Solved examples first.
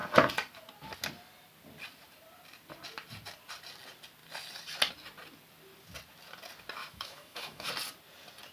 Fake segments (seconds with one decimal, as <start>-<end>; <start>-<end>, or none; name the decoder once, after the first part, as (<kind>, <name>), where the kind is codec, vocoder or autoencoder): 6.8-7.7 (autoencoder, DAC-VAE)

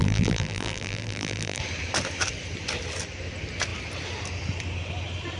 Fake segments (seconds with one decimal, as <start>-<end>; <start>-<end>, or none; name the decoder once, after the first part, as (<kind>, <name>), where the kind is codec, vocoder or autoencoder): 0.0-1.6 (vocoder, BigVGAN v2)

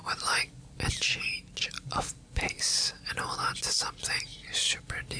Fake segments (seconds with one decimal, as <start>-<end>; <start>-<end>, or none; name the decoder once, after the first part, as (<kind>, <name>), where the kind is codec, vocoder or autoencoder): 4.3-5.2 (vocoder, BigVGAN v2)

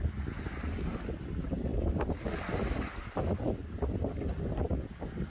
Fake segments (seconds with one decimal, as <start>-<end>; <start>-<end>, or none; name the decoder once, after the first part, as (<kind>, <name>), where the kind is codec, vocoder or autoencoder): none